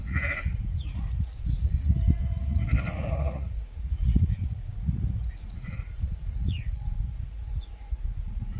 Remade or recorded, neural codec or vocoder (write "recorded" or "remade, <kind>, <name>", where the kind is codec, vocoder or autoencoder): remade, vocoder, Vocos